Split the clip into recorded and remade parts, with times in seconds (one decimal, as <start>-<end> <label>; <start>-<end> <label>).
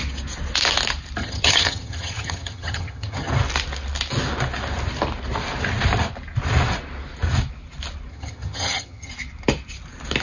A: 0.0-1.2 recorded; 1.2-3.3 remade; 3.3-8.1 recorded; 8.1-9.1 remade; 9.1-10.2 recorded